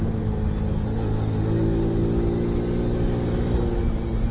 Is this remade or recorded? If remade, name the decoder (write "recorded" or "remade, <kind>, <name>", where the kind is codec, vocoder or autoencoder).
recorded